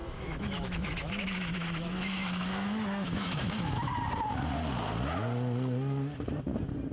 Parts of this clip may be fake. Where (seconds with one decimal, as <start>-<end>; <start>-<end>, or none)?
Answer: 0.0-3.9